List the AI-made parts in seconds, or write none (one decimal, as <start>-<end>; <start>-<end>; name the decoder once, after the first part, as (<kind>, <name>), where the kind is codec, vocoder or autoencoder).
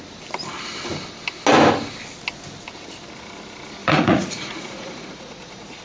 3.8-5.8 (vocoder, Vocos)